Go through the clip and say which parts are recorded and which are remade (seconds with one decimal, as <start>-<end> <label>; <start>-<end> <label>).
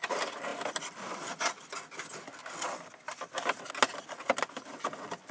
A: 0.0-5.3 recorded